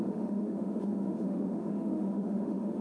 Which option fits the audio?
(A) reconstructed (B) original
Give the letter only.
A